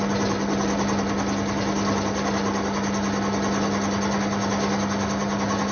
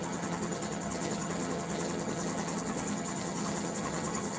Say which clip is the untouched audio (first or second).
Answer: first